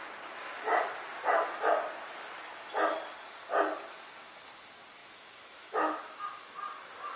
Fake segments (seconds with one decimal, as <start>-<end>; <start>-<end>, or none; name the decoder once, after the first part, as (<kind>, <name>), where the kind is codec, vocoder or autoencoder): 5.0-6.2 (autoencoder, DAC-VAE)